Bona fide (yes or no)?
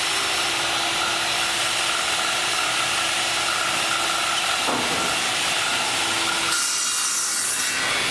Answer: yes